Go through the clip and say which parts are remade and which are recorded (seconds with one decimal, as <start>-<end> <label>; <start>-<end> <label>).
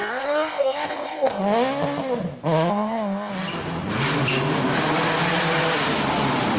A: 0.0-1.4 remade; 1.4-2.7 recorded; 2.7-3.3 remade; 3.3-6.6 recorded